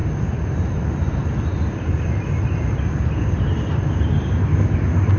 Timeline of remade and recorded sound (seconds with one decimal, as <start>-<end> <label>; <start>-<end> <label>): 0.0-5.2 recorded